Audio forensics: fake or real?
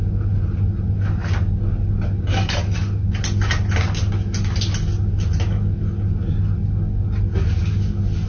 real